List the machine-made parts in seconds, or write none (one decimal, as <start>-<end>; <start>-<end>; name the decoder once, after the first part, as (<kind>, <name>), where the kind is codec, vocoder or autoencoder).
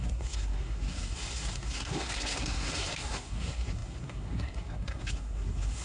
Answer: 0.0-5.8 (codec, SNAC)